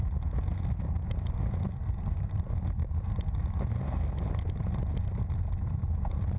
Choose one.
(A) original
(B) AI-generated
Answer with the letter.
A